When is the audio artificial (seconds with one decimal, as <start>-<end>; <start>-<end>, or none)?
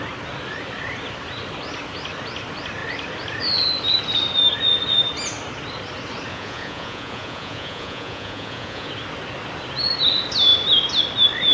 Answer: 6.3-8.9